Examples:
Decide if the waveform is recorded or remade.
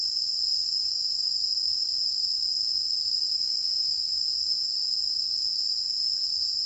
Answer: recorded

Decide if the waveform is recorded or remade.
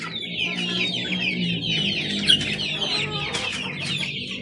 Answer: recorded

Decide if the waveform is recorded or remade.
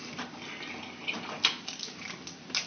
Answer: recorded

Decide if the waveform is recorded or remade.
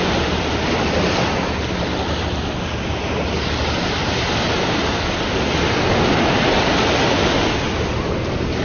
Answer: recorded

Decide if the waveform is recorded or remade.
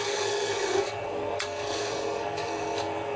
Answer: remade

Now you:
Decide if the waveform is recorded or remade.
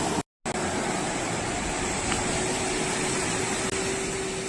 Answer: recorded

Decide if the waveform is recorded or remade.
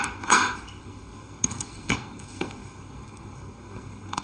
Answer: remade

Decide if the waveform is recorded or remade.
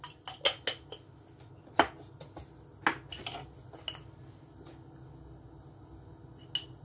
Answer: recorded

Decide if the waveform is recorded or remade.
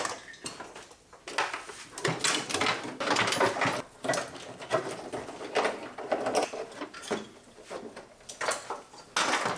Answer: recorded